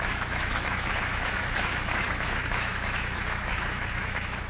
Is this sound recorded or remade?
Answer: remade